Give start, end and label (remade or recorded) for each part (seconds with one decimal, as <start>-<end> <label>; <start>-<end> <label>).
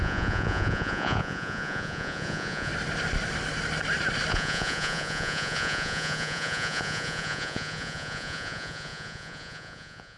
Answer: 0.0-2.7 remade; 2.7-4.3 recorded; 4.3-10.2 remade